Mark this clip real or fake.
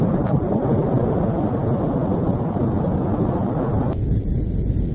real